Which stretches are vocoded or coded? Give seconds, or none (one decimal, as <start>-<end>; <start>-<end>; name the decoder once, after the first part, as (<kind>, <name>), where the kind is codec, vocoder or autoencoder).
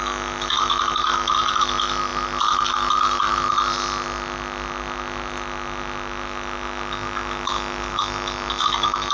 none